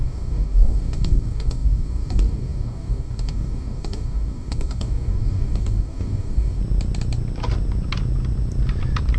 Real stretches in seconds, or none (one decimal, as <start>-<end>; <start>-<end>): 6.6-9.2